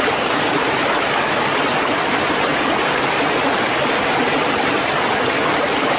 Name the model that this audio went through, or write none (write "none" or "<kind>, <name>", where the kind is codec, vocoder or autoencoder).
none